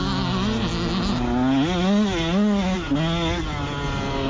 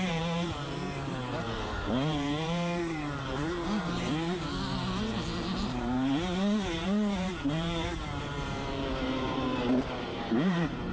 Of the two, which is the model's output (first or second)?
second